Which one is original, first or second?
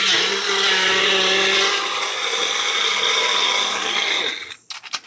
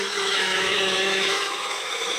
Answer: first